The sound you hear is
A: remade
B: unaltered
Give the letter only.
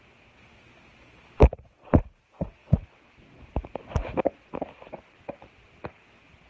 B